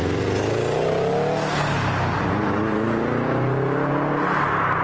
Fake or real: real